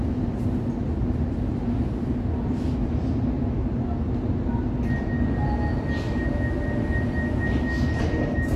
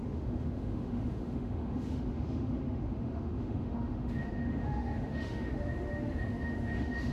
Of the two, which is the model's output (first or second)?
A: second